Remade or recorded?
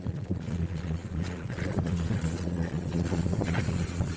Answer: remade